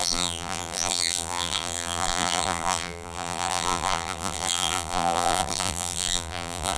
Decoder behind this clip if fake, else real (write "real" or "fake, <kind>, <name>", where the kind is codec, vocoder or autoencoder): fake, vocoder, BigVGAN v2